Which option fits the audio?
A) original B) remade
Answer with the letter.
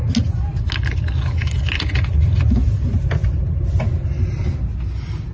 A